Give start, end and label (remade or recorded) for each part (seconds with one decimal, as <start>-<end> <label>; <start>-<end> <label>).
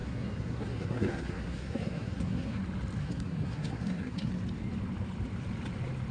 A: 0.0-2.6 remade; 2.6-3.0 recorded; 3.0-4.3 remade; 4.3-6.1 recorded